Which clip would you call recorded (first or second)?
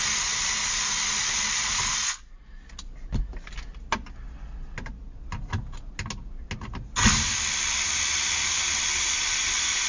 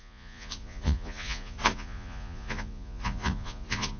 first